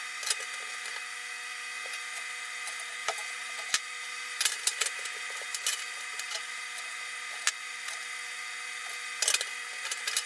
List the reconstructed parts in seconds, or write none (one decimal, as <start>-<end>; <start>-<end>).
3.0-6.0